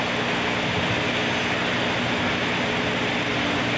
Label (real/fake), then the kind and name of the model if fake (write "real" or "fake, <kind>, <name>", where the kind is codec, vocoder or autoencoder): real